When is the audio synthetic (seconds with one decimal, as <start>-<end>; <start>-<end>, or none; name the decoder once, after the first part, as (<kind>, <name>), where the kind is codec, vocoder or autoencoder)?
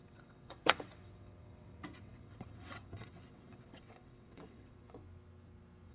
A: 0.0-5.0 (vocoder, WaveNeXt)